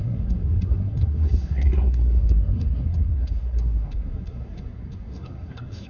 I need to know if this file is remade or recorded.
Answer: remade